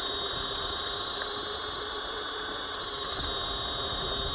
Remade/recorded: recorded